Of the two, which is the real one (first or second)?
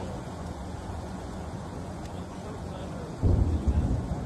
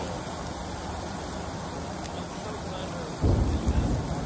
second